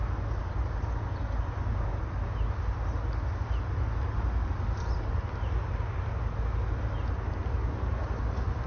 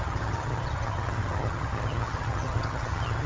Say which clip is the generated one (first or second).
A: second